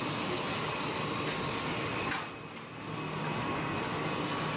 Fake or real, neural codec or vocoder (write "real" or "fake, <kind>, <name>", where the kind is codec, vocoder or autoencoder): real